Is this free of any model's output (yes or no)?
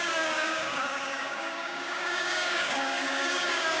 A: no